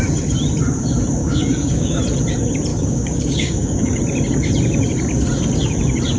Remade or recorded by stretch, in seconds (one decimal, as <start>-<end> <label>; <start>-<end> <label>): 0.0-1.2 recorded; 1.2-2.0 remade; 2.0-2.7 recorded; 2.7-4.0 remade; 4.0-6.2 recorded

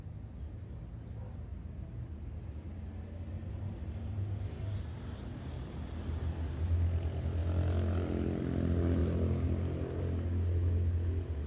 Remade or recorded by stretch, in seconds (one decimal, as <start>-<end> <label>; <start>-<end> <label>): 0.0-11.5 recorded

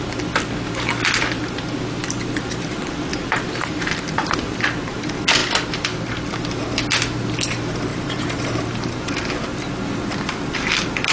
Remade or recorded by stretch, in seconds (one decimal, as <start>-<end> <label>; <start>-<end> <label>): 0.0-3.1 recorded; 3.1-3.9 remade; 3.9-7.9 recorded; 7.9-9.3 remade; 9.3-11.1 recorded

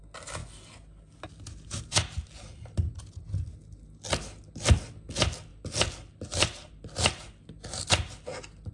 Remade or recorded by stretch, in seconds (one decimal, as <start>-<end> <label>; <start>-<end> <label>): 0.0-8.7 recorded

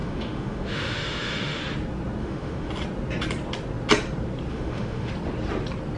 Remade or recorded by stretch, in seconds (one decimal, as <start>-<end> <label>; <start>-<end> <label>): 0.0-1.6 remade; 1.6-2.2 recorded; 2.2-2.7 remade; 2.7-4.5 recorded; 4.5-5.1 remade; 5.1-6.0 recorded

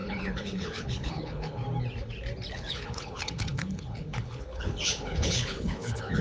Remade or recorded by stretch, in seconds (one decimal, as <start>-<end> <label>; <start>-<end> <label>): 0.0-1.6 remade; 1.6-2.5 recorded; 2.5-6.2 remade